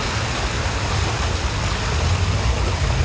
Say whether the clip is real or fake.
real